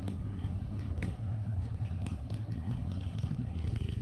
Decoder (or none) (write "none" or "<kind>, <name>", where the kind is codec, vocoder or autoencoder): codec, SNAC